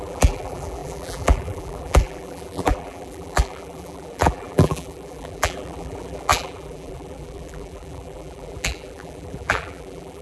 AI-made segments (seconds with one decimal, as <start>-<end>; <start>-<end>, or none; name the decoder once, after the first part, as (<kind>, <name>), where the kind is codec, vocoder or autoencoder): 0.0-10.2 (vocoder, BigVGAN v2)